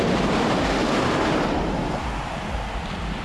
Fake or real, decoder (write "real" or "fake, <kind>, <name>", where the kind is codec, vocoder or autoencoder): real